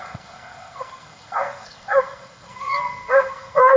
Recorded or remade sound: remade